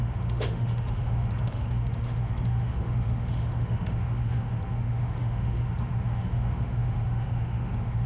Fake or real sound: fake